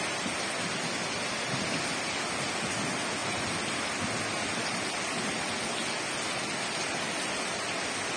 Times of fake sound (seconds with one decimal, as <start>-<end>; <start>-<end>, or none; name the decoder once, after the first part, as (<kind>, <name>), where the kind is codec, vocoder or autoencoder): none